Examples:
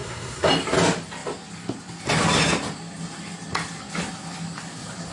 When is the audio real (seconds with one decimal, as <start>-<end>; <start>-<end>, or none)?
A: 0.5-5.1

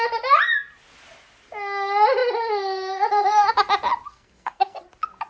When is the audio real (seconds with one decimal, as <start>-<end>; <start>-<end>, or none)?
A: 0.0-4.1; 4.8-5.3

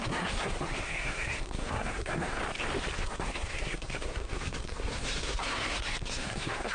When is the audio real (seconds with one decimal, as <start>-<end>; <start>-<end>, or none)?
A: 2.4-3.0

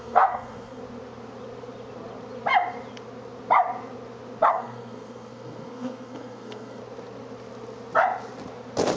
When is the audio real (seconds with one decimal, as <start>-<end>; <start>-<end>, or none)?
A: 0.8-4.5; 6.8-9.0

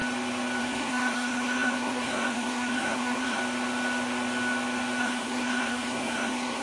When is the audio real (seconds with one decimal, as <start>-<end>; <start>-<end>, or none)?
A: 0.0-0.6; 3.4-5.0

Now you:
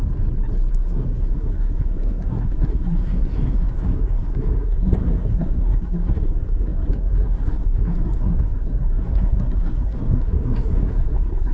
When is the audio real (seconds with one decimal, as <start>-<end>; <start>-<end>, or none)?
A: 0.0-0.7

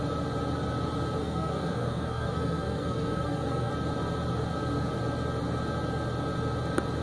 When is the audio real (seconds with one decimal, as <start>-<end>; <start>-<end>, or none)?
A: 0.0-1.2; 3.7-7.0

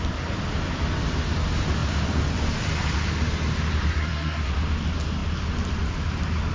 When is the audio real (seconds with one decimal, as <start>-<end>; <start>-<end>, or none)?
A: 0.0-3.9; 4.5-6.5